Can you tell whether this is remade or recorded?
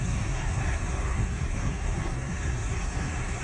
remade